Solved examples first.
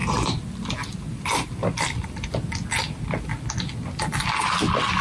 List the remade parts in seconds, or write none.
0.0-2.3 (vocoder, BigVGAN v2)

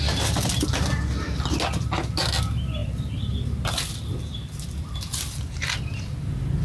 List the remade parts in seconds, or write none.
none

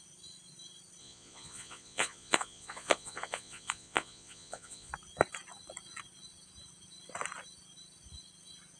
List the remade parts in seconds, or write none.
1.0-4.9 (vocoder, Vocos)

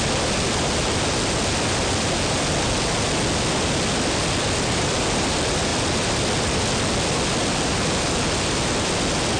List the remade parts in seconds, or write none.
none

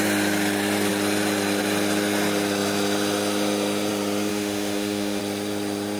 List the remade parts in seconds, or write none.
4.3-5.2 (autoencoder, DAC-VAE)

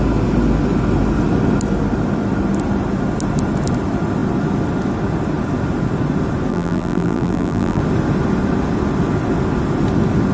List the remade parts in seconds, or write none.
6.5-7.8 (vocoder, BigVGAN v2)

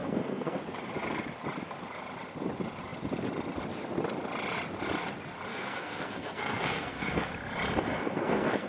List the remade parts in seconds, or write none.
0.0-0.6 (codec, SNAC); 5.5-7.3; 7.9-8.7